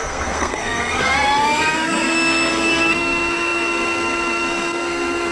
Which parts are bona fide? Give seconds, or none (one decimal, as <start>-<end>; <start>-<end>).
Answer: none